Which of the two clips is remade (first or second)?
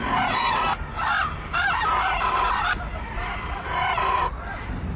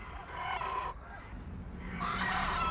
first